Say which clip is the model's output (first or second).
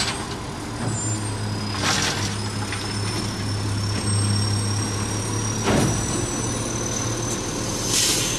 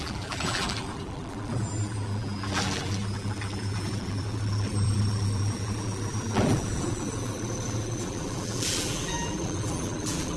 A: second